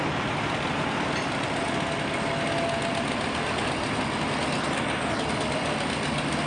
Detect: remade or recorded recorded